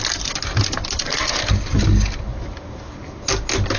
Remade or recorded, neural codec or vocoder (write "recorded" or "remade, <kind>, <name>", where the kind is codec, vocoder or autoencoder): recorded